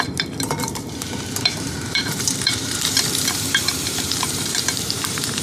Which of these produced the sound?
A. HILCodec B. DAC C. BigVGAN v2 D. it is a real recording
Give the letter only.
C